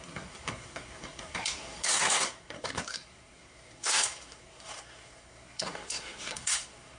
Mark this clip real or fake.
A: fake